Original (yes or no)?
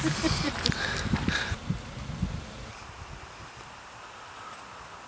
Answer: yes